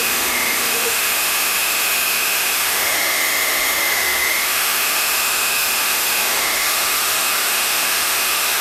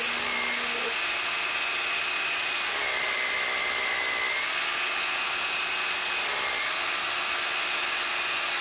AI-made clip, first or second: first